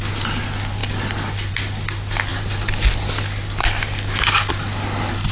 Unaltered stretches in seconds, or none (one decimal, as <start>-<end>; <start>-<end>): 0.0-5.3